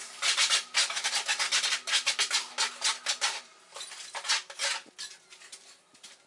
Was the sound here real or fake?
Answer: real